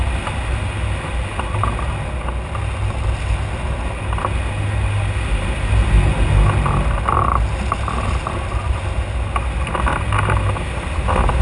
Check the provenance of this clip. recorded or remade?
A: recorded